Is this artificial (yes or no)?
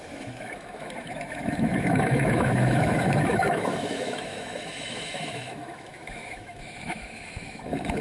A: yes